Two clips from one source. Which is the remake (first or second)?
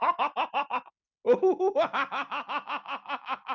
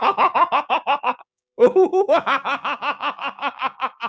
second